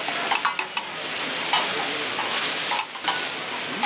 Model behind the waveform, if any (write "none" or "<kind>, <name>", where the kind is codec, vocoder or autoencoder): none